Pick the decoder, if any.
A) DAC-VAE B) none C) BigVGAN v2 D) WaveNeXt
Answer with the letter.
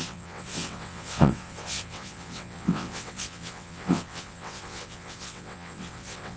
D